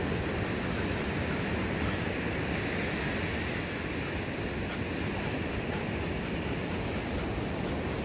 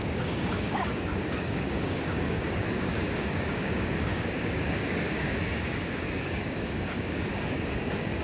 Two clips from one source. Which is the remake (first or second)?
second